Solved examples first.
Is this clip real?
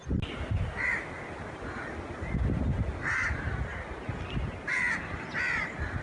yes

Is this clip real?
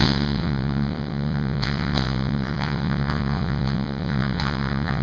no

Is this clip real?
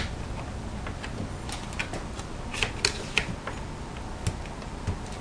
yes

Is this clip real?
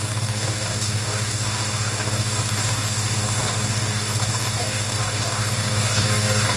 no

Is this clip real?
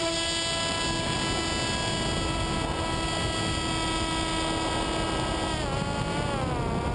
yes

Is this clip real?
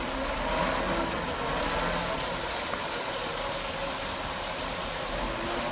yes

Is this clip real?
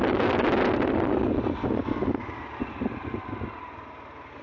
yes